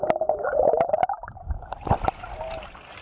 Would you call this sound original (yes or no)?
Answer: yes